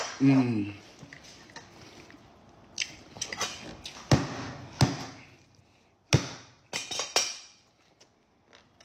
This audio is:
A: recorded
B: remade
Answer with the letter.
A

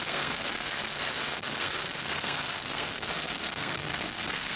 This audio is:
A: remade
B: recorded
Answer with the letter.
A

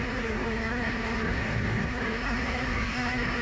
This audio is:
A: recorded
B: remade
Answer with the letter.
B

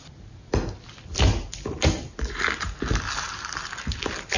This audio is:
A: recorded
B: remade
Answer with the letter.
A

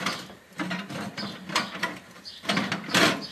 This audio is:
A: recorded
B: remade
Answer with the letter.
A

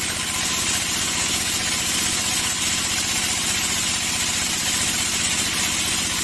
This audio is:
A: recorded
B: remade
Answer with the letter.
A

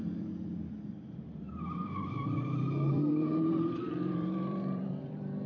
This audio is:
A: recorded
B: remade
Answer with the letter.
B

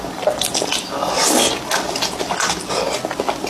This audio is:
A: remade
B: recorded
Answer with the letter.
B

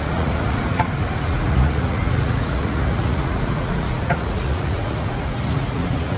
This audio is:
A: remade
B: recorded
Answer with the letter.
A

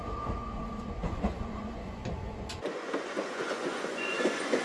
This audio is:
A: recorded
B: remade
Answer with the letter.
B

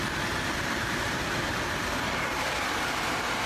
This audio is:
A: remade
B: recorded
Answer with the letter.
A